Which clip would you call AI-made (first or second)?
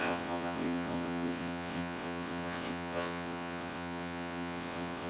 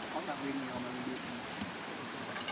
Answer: first